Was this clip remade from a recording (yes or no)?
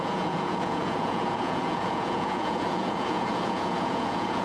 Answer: yes